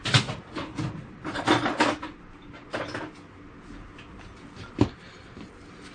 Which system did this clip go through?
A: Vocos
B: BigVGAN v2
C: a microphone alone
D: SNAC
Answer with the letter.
C